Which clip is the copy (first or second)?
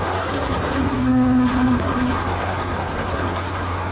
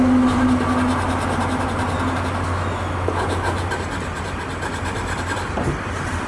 first